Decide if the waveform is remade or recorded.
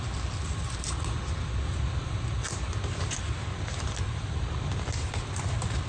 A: recorded